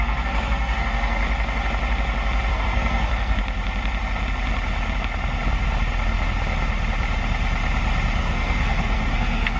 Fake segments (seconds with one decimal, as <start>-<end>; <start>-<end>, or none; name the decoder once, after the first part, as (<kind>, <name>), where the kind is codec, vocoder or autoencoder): 0.0-1.2 (codec, SNAC); 2.5-3.4; 8.2-9.6